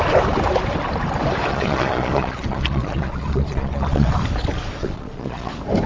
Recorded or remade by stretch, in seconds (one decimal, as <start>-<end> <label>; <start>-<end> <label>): 0.0-1.5 recorded; 1.5-4.1 remade; 4.1-4.8 recorded; 4.8-5.5 remade; 5.5-5.9 recorded